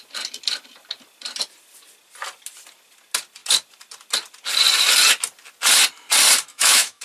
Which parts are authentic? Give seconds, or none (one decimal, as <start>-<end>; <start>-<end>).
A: 0.0-6.5